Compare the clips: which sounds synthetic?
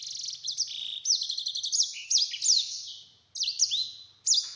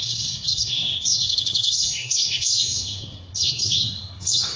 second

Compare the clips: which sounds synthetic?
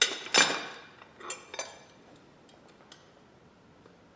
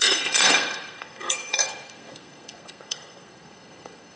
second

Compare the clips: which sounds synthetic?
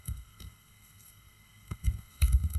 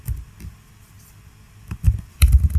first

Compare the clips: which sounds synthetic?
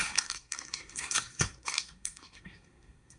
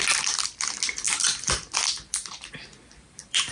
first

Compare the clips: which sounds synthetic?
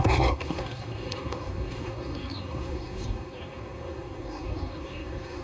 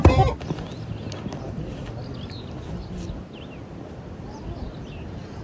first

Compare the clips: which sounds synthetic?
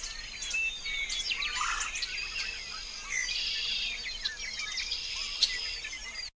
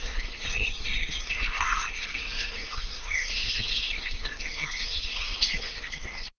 second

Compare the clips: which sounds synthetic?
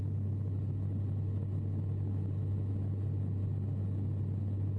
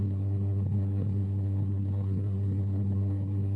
second